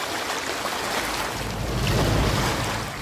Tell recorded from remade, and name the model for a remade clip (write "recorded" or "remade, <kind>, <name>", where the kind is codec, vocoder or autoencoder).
recorded